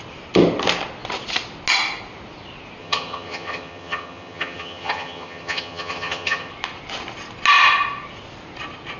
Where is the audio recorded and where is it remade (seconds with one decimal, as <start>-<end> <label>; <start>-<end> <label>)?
0.0-2.8 recorded; 2.8-6.5 remade; 6.5-9.0 recorded